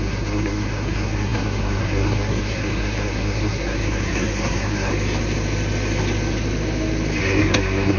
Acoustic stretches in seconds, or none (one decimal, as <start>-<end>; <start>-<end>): 4.9-7.2